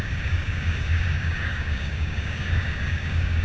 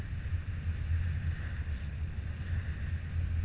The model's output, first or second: first